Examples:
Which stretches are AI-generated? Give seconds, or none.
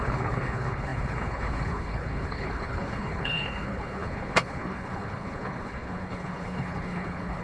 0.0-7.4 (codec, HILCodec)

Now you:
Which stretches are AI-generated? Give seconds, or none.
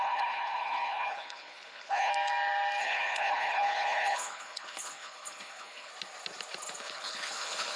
0.0-2.1 (codec, HILCodec); 2.8-5.9; 6.8-7.8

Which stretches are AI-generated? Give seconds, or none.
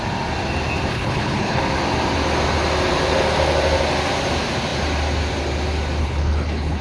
0.9-1.6 (codec, HILCodec); 6.0-6.8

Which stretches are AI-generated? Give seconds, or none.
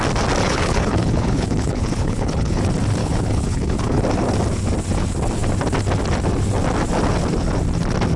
0.4-2.6 (codec, HILCodec); 3.0-4.0